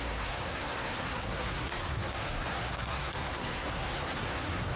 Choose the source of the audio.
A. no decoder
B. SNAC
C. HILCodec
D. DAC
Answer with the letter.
B